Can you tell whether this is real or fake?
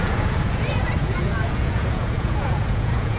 fake